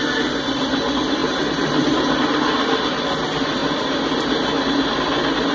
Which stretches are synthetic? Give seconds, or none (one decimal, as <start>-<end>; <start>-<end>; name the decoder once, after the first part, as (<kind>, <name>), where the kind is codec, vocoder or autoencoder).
1.2-1.9 (vocoder, BigVGAN v2)